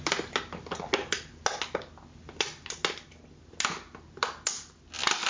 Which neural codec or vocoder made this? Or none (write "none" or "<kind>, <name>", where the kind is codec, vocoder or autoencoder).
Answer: none